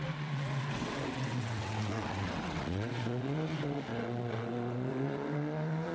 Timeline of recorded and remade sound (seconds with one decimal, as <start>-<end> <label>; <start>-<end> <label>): 0.0-5.9 remade